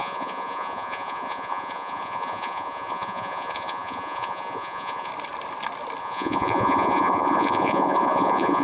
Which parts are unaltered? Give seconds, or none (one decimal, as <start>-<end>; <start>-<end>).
5.1-6.0